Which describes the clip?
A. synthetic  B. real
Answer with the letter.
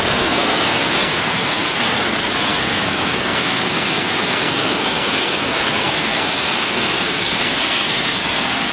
A